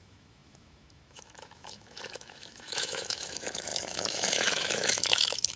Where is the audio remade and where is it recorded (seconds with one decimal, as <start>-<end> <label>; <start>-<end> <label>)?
0.0-5.6 remade